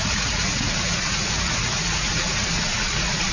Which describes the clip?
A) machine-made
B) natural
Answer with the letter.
A